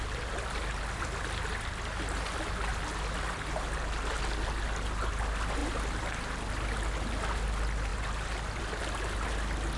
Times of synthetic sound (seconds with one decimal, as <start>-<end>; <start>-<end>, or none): none